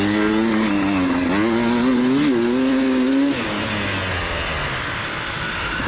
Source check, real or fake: real